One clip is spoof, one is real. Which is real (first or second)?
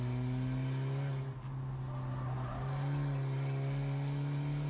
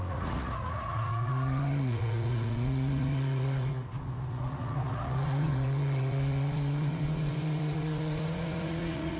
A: first